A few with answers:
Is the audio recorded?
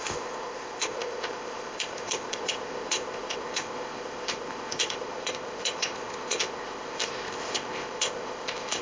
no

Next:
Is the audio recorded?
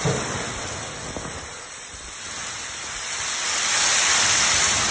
yes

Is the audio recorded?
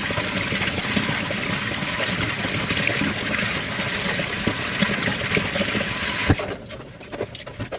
yes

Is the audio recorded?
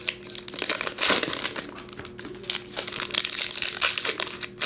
yes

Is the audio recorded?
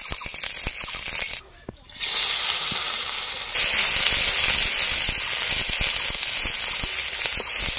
yes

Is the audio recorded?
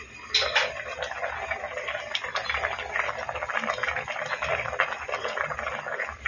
yes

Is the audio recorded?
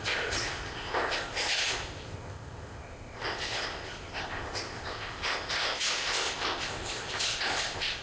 no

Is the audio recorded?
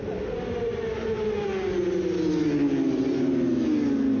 yes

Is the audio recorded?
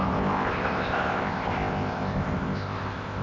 no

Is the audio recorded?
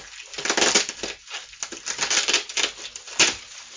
yes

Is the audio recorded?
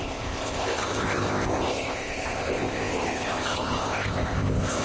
no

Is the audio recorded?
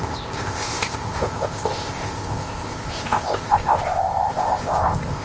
no